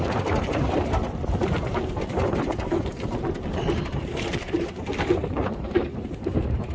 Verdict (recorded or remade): remade